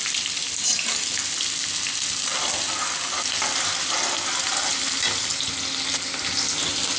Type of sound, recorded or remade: recorded